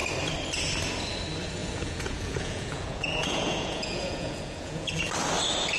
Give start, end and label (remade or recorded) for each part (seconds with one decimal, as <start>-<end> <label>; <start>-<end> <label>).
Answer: 0.0-1.6 recorded; 1.6-5.1 remade; 5.1-5.8 recorded